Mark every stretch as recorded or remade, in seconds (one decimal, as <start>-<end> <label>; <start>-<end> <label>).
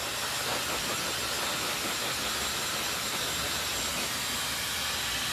0.0-5.3 recorded